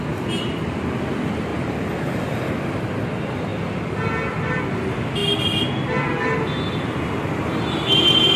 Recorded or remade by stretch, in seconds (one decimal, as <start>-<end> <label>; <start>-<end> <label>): 0.0-1.5 recorded; 1.5-2.5 remade; 2.5-8.4 recorded